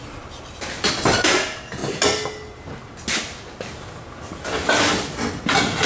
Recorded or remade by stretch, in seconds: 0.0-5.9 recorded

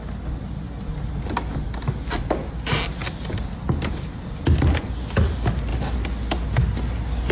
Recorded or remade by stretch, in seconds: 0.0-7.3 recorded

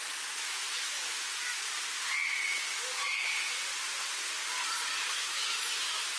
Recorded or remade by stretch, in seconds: 0.0-1.7 remade; 1.7-5.1 recorded; 5.1-6.2 remade

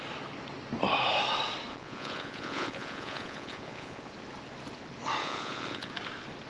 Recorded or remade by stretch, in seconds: 0.0-1.7 recorded; 1.7-4.1 remade; 4.1-5.2 recorded; 5.2-5.9 remade; 5.9-6.5 recorded

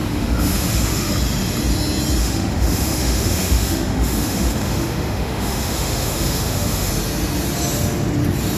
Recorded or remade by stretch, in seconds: 0.0-1.1 remade; 1.1-2.2 recorded; 2.2-6.9 remade; 6.9-8.6 recorded